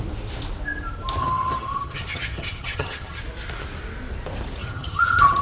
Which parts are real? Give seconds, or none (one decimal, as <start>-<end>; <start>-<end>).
0.0-1.2; 3.2-4.6